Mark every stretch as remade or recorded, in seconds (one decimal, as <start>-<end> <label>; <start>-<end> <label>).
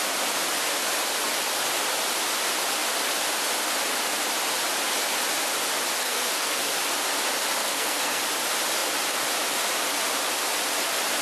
0.0-6.0 recorded; 6.0-6.6 remade; 6.6-7.6 recorded; 7.6-8.2 remade; 8.2-11.2 recorded